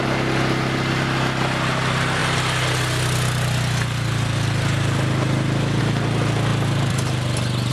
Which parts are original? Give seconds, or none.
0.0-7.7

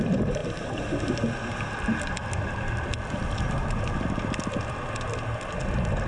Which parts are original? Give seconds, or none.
0.0-6.1

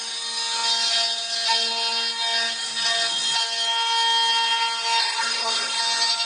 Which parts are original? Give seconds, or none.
0.0-5.0; 5.8-6.2

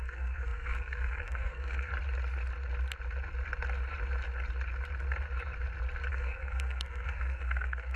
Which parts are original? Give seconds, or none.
1.9-6.1

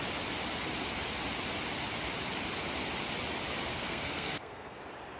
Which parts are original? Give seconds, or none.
0.0-3.7; 4.8-5.2